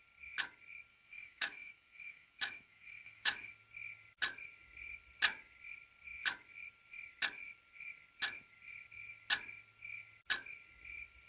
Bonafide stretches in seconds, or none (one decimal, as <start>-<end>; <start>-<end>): 0.0-0.9; 3.5-11.3